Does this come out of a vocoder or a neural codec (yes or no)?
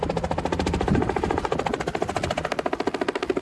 no